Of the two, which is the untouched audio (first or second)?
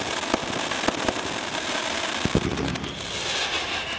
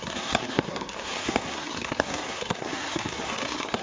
first